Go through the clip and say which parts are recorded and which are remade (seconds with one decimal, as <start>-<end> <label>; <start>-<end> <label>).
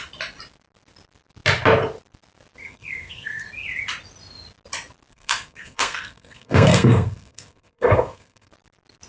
0.0-2.6 recorded; 2.6-3.5 remade; 3.5-5.1 recorded; 5.1-8.5 remade; 8.5-9.1 recorded